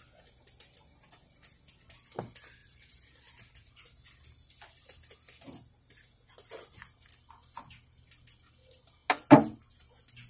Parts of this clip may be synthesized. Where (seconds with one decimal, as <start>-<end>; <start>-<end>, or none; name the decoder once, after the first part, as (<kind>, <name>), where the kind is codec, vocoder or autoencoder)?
2.6-3.5 (vocoder, BigVGAN v2)